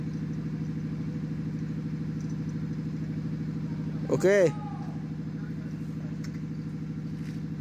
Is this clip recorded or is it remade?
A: recorded